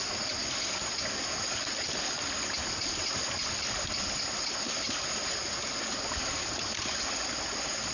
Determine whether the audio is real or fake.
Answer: real